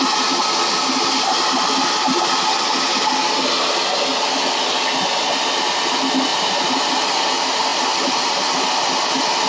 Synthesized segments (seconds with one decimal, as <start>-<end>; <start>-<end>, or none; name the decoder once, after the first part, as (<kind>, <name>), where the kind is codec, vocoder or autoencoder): 4.1-5.2 (vocoder, BigVGAN v2); 6.3-6.9